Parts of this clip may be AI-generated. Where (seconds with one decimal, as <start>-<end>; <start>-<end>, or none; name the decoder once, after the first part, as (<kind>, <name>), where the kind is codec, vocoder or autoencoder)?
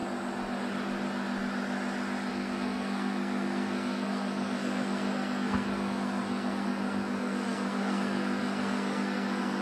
2.3-9.6 (codec, SNAC)